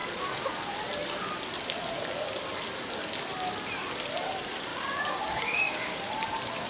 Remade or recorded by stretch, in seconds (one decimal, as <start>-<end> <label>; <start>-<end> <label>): 0.0-4.7 recorded; 4.7-6.0 remade; 6.0-6.7 recorded